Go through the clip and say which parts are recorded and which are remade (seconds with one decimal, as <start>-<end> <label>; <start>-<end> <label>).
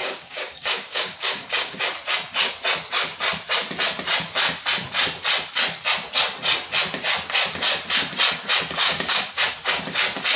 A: 0.0-1.8 remade; 1.8-8.8 recorded; 8.8-9.4 remade; 9.4-10.4 recorded